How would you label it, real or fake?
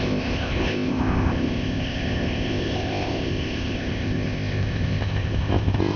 fake